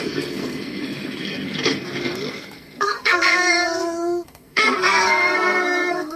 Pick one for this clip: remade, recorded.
remade